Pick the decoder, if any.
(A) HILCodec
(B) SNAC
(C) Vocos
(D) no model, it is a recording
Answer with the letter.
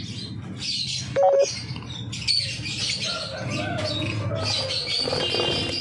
D